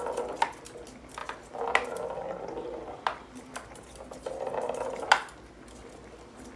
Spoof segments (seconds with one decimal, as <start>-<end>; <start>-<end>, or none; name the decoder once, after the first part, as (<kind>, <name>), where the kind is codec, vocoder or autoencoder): none